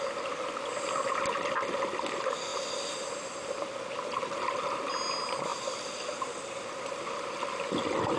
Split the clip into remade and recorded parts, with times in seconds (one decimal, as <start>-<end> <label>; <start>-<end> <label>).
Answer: 0.0-8.2 recorded